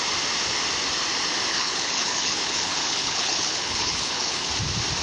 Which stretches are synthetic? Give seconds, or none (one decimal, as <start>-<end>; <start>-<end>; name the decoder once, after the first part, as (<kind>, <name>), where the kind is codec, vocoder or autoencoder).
1.5-4.5 (codec, HILCodec)